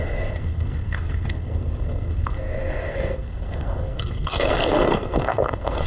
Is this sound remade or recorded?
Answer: remade